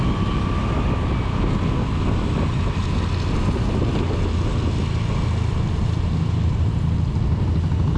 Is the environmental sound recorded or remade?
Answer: recorded